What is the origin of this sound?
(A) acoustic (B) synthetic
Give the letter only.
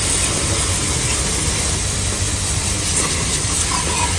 A